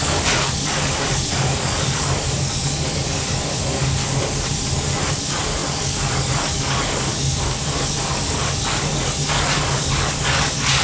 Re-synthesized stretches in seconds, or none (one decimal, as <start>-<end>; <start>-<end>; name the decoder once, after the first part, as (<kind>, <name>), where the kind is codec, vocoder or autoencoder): 0.0-4.0 (codec, DAC); 5.1-10.8